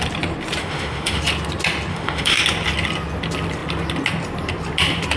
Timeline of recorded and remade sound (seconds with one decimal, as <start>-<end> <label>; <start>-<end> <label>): 0.0-0.6 recorded; 0.6-1.2 remade; 1.2-1.9 recorded; 1.9-2.4 remade; 2.4-5.2 recorded